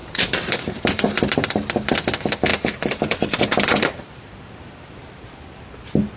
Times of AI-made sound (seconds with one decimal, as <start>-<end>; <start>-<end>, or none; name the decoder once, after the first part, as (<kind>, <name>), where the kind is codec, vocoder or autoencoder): 0.0-1.3 (vocoder, BigVGAN v2); 2.5-4.2